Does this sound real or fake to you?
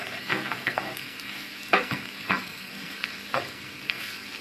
fake